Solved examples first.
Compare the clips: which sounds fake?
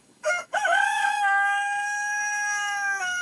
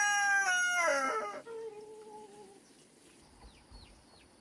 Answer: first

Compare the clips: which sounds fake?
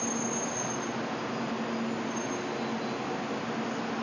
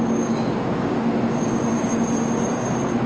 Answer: second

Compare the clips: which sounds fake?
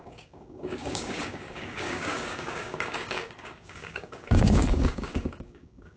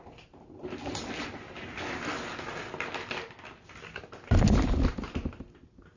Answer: first